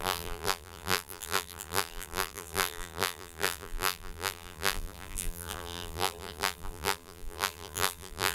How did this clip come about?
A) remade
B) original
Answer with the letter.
A